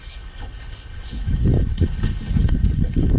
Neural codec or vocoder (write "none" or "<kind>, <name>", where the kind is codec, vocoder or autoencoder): codec, HILCodec